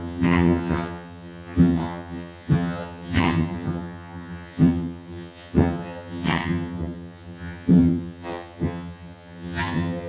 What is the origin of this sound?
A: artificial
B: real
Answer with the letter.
A